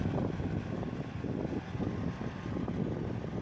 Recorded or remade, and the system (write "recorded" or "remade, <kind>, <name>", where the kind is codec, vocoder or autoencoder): recorded